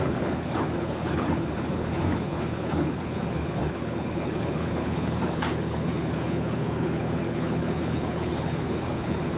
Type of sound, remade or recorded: remade